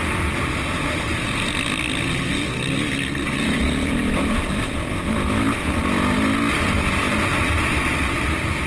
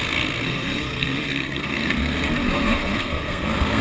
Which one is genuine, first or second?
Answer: first